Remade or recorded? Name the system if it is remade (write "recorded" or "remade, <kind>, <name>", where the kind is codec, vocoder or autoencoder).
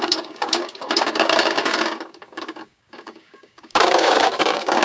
remade, codec, DAC